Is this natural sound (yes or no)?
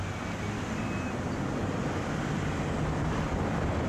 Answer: yes